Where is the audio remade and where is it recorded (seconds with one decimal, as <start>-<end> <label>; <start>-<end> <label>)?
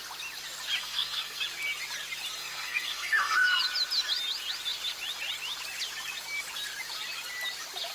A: 0.0-0.8 recorded; 0.8-1.4 remade; 1.4-2.4 recorded; 2.4-3.6 remade; 3.6-7.9 recorded